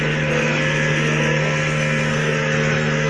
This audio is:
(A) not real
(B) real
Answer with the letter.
A